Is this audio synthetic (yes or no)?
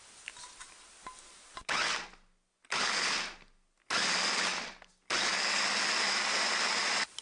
no